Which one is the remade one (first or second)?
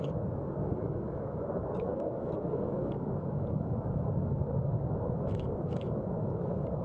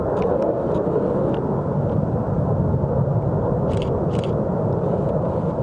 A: first